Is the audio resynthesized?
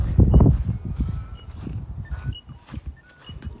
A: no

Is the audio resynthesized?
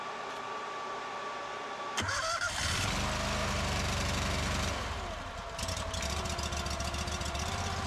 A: no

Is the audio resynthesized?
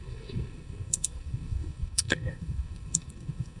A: yes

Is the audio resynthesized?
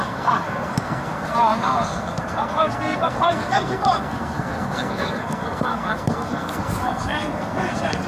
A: yes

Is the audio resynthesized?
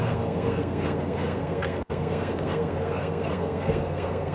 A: yes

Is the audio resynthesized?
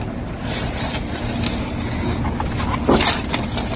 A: no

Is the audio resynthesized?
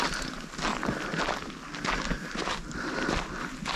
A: no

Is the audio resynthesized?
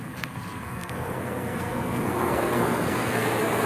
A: yes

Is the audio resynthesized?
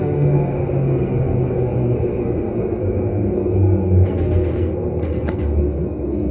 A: yes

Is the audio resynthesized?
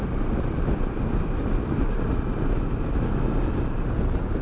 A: no